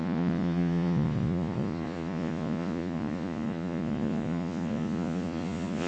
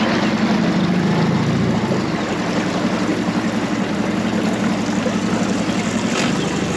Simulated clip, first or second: first